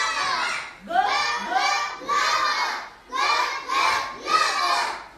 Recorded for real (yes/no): yes